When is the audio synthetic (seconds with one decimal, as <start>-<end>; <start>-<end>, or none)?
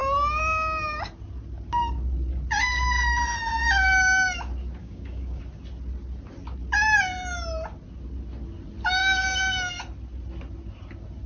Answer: 4.8-5.4; 9.0-9.8